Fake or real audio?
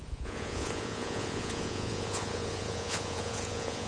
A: fake